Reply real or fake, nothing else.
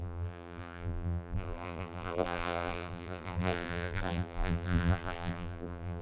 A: fake